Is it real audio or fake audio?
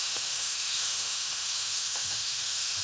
fake